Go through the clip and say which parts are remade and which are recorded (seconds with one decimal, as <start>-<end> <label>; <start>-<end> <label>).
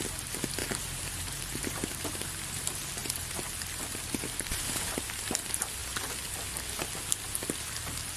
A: 0.0-0.6 recorded; 0.6-2.1 remade; 2.1-8.2 recorded